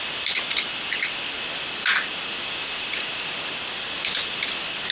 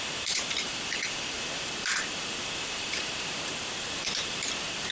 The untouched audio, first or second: first